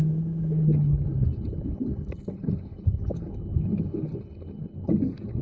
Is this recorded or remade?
recorded